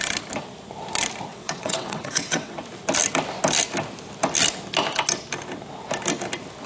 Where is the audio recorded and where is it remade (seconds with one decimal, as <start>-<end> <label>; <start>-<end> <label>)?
0.0-1.3 recorded; 1.3-2.5 remade; 2.5-6.7 recorded